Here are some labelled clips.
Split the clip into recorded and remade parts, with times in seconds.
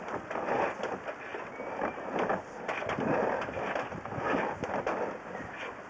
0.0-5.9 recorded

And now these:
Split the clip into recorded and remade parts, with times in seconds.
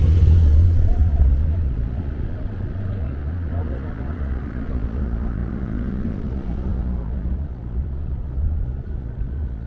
0.0-9.7 remade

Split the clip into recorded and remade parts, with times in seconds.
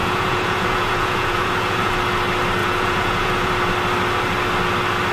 0.0-1.9 remade; 1.9-2.6 recorded; 2.6-3.5 remade; 3.5-5.1 recorded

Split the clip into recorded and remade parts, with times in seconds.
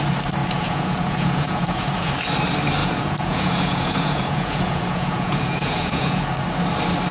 0.0-0.4 recorded; 0.4-2.1 remade; 2.1-2.8 recorded; 2.8-6.2 remade; 6.2-7.1 recorded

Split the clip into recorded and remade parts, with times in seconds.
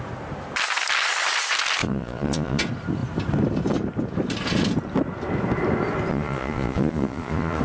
0.0-1.8 recorded; 1.8-2.6 remade; 2.6-6.1 recorded; 6.1-7.6 remade